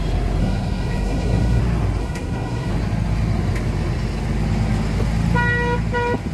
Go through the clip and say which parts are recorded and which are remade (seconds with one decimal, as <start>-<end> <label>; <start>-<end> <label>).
0.0-0.4 recorded; 0.4-1.6 remade; 1.6-2.0 recorded; 2.0-2.7 remade; 2.7-6.3 recorded